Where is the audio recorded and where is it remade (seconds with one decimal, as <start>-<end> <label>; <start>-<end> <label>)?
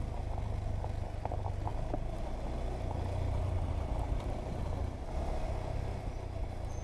0.0-6.8 recorded